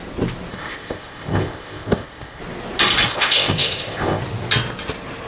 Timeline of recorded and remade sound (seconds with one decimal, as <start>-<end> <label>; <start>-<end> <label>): 0.0-0.5 recorded; 0.5-2.4 remade; 2.4-3.1 recorded; 3.1-4.2 remade; 4.2-5.3 recorded